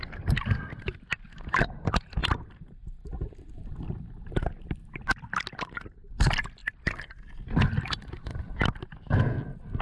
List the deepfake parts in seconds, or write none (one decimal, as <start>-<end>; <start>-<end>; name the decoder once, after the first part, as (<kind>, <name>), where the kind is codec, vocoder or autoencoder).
none